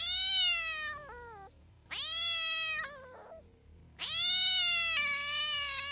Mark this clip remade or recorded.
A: recorded